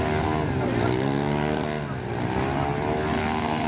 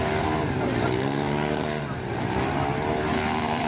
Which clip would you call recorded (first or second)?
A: first